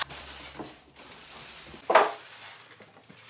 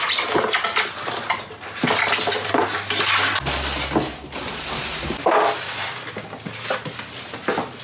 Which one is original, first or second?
second